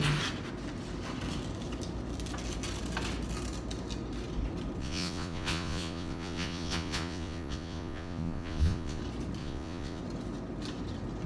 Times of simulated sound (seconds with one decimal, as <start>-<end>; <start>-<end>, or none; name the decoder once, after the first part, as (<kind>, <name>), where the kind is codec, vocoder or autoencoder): 4.8-9.0 (vocoder, Vocos); 9.4-10.0